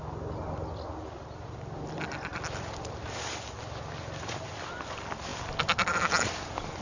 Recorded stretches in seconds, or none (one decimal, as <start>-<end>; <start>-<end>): 0.0-6.8